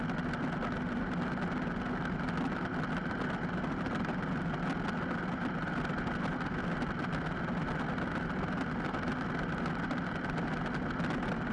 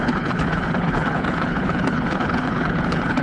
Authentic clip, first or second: first